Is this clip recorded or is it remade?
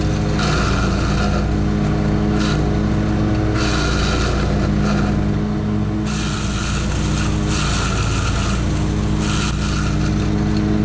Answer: recorded